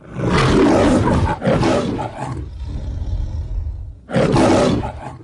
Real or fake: real